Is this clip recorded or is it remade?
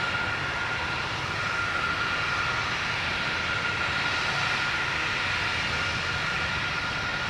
recorded